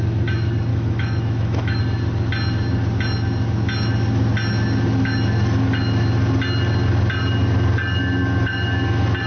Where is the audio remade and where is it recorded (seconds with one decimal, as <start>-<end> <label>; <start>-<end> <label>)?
0.0-0.7 recorded; 0.7-1.8 remade; 1.8-9.3 recorded